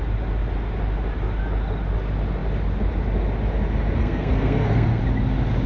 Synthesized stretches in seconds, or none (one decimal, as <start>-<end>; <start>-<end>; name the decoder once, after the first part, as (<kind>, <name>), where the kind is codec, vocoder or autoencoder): 4.0-5.0 (codec, SNAC)